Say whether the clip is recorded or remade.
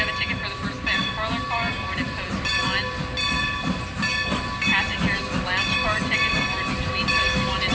recorded